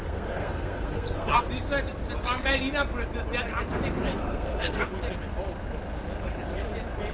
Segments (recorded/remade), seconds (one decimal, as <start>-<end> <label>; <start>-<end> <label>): 0.0-1.4 remade; 1.4-4.1 recorded; 4.1-4.9 remade; 4.9-7.1 recorded